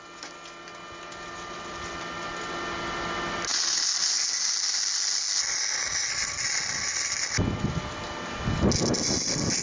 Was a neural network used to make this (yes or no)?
no